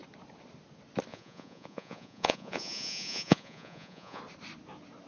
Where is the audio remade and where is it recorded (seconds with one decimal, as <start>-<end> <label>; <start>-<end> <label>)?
0.0-1.1 recorded; 1.1-4.2 remade; 4.2-5.1 recorded